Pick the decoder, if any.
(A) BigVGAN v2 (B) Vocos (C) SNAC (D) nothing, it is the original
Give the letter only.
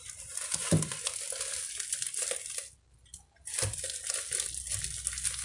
D